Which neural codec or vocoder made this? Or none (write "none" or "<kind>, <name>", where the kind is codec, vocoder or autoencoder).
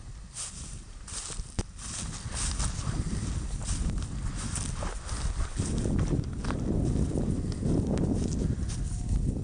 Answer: none